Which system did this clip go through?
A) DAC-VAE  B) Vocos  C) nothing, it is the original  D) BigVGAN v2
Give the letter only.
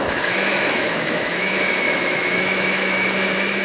A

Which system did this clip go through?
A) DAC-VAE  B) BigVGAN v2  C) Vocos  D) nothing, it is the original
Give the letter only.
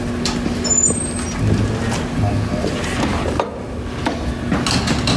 D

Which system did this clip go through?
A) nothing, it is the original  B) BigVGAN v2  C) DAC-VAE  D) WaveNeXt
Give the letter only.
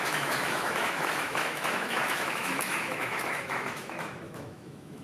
C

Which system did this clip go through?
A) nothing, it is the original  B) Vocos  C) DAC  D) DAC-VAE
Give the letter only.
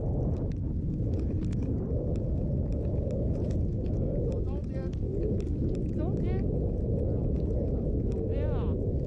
A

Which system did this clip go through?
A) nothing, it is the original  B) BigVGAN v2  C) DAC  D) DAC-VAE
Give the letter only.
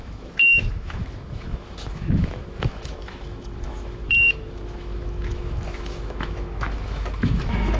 D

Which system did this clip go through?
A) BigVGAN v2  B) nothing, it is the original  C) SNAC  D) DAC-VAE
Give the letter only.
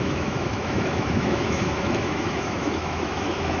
D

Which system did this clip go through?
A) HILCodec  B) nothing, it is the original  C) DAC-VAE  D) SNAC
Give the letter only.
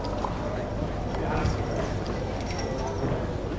B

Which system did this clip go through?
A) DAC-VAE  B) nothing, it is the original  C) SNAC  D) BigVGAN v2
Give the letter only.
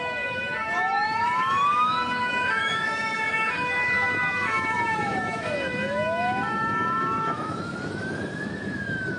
A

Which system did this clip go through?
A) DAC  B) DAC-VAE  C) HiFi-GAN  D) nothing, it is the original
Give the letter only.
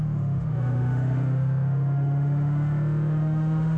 B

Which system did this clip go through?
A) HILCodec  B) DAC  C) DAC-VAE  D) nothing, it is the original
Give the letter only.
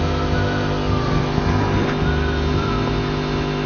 D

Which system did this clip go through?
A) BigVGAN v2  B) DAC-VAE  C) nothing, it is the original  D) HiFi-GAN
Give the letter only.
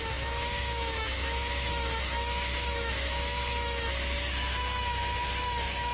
B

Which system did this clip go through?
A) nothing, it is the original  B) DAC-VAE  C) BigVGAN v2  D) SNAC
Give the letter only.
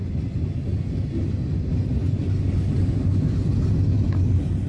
A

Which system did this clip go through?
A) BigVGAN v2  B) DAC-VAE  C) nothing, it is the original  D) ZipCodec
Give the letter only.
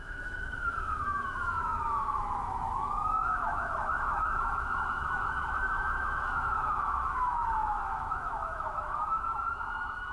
B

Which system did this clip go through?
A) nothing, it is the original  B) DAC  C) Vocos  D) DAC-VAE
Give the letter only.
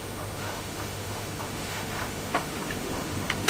D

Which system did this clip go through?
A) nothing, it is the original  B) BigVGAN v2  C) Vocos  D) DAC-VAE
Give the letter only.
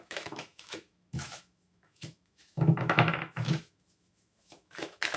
D